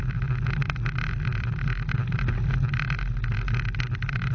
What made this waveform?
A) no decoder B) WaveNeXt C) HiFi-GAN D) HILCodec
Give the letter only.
A